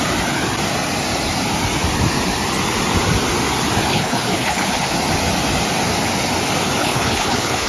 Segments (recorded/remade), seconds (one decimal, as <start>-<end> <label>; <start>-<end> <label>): 0.0-3.9 recorded; 3.9-4.9 remade; 4.9-6.8 recorded; 6.8-7.7 remade